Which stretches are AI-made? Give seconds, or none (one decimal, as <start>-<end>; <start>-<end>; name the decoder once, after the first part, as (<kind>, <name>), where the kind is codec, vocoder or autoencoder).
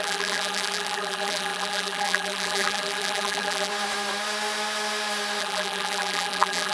0.0-3.7 (vocoder, BigVGAN v2); 5.4-6.7